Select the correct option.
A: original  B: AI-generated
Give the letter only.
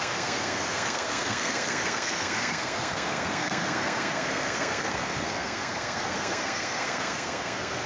B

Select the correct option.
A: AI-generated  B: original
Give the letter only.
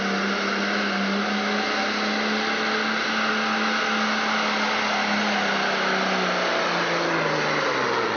B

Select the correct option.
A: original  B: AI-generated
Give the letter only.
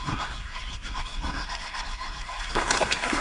B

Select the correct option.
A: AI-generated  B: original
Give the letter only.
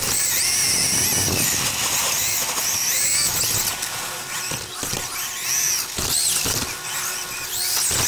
B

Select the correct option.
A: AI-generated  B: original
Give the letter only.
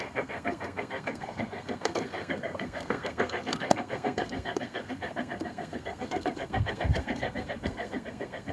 A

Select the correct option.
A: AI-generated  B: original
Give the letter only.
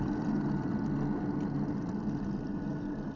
B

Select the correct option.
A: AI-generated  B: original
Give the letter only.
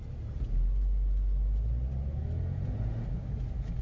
B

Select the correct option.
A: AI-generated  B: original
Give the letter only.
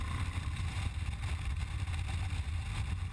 B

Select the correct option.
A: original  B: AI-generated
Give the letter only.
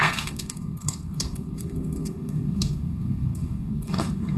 B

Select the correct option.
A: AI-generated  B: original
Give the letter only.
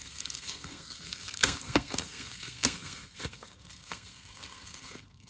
A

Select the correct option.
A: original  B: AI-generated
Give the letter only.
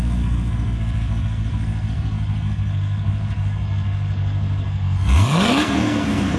B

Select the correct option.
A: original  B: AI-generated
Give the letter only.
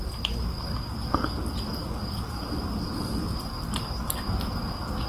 A